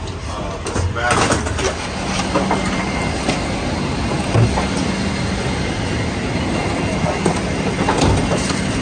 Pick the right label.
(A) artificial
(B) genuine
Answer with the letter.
B